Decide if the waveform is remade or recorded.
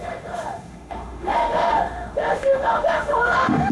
remade